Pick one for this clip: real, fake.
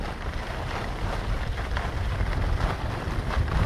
real